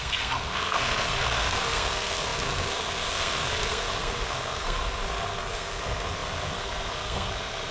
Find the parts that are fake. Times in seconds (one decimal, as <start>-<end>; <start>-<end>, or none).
0.0-7.7

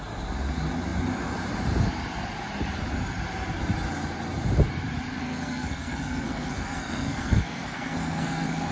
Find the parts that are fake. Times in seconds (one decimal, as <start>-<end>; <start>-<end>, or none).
5.2-8.7